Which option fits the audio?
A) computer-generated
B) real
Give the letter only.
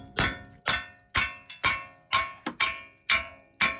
B